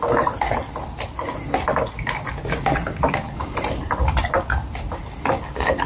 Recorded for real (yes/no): yes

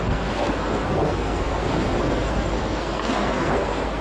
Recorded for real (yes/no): no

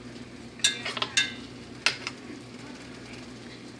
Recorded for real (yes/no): yes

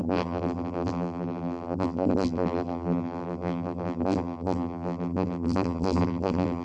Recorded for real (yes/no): no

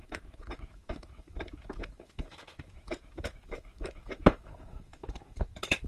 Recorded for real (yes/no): no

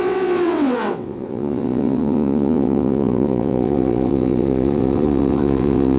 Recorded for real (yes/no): no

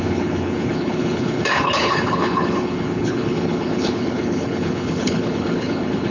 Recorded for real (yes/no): no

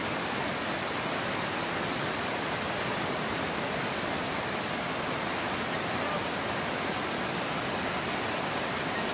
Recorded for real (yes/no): yes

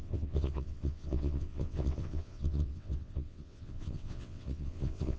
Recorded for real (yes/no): no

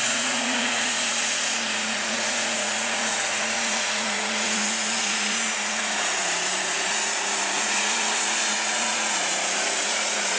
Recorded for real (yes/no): no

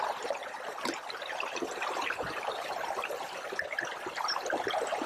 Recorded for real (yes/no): yes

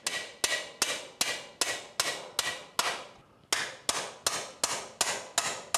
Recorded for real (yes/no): yes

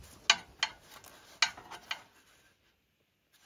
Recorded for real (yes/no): yes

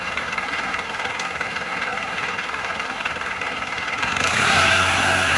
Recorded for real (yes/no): no